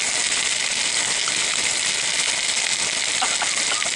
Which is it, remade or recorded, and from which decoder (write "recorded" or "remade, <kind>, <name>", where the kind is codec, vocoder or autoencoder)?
recorded